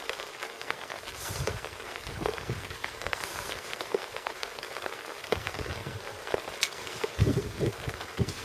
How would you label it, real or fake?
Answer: fake